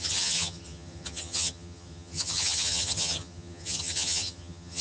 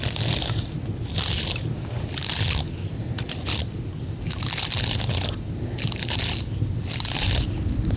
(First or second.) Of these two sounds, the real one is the second